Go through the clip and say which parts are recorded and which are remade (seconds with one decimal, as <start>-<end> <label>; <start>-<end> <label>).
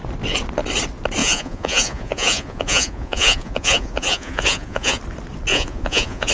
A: 0.0-1.2 recorded; 1.2-5.0 remade; 5.0-5.5 recorded; 5.5-6.3 remade